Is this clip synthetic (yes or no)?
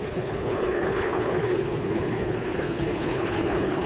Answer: yes